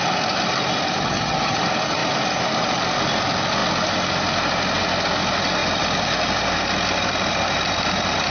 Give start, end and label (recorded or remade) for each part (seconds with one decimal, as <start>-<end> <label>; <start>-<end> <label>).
0.0-1.0 recorded; 1.0-1.6 remade; 1.6-8.3 recorded